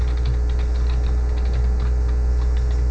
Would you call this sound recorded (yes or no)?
yes